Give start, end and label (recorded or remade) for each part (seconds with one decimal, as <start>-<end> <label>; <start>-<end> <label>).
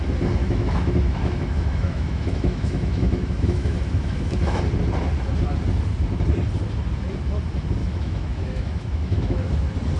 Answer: 0.0-0.4 recorded; 0.4-4.6 remade; 4.6-7.8 recorded; 7.8-9.5 remade; 9.5-10.0 recorded